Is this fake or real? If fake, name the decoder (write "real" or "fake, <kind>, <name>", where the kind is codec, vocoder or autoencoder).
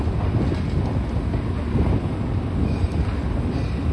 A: real